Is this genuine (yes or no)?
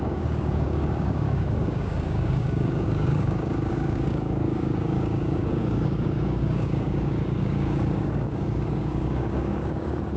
no